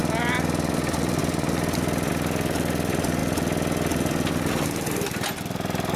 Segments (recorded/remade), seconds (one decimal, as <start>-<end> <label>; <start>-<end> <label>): 0.0-0.7 recorded; 0.7-3.2 remade; 3.2-4.3 recorded; 4.3-6.0 remade